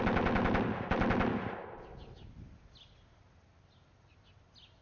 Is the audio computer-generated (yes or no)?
no